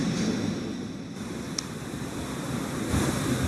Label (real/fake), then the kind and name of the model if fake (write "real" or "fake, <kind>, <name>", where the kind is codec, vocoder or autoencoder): real